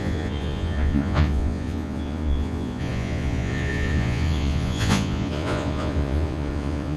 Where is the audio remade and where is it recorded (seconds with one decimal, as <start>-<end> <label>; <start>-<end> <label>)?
0.0-7.0 remade